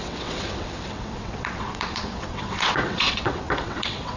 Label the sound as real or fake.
fake